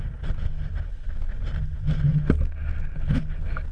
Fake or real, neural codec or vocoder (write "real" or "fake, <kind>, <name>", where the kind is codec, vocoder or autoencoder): real